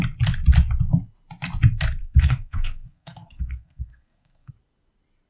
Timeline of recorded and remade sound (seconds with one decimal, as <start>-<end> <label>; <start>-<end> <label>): 0.0-2.0 recorded; 2.0-4.5 remade; 4.5-5.3 recorded